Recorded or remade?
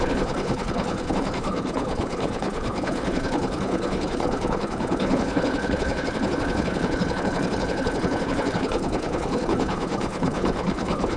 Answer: remade